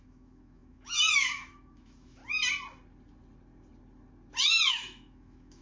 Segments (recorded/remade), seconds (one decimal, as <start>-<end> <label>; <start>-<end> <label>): 0.0-2.2 remade; 2.2-4.7 recorded; 4.7-5.6 remade